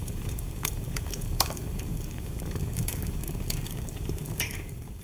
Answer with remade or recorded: remade